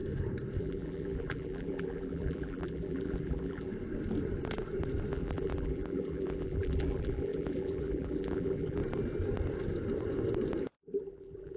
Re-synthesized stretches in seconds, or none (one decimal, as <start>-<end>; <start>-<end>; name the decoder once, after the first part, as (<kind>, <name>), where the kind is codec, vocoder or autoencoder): 0.6-3.7 (vocoder, BigVGAN v2); 5.1-8.8; 10.6-11.6